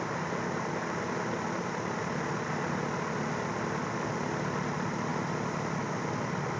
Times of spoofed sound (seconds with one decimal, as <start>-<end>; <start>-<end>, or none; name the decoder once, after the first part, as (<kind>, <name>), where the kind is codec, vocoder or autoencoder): none